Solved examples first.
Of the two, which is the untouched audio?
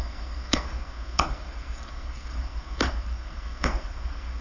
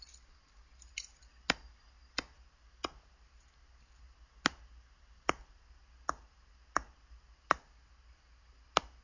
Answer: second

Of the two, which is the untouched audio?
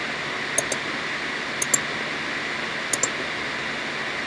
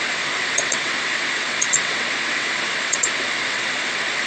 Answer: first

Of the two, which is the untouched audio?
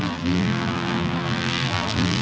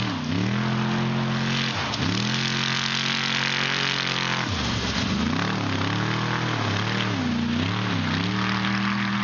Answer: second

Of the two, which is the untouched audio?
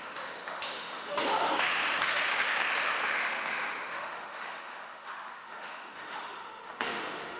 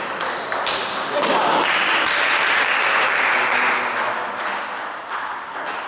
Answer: second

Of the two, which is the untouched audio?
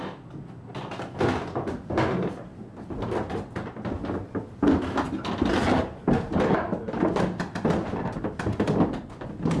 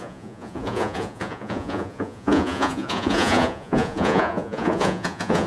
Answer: first